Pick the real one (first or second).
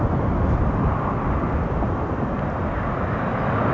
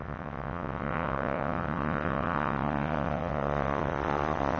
first